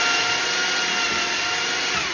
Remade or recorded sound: recorded